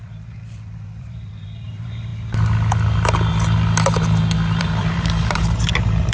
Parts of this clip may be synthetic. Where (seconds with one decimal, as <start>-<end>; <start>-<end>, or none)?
0.0-2.1; 4.6-6.1